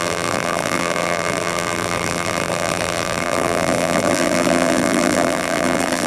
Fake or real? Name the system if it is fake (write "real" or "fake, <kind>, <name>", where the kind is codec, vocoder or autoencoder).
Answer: fake, vocoder, BigVGAN v2